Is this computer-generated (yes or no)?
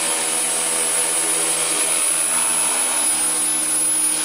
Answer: no